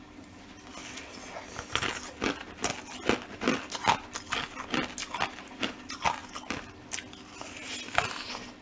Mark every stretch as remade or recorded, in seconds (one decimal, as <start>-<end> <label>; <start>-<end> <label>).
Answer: 0.0-8.6 recorded